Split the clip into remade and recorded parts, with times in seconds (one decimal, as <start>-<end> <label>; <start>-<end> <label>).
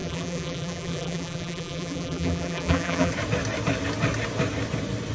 0.0-3.1 remade; 3.1-5.1 recorded